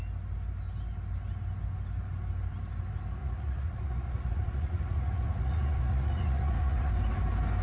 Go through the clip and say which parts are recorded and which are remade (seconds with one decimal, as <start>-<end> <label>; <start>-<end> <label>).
0.0-3.2 recorded; 3.2-6.9 remade; 6.9-7.6 recorded